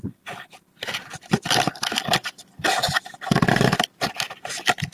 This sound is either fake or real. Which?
real